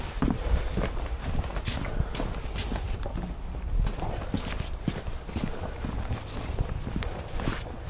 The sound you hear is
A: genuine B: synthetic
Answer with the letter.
A